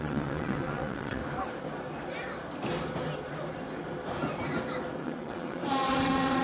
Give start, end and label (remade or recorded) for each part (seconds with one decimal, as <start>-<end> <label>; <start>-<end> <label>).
0.0-1.2 remade; 1.2-5.0 recorded; 5.0-6.4 remade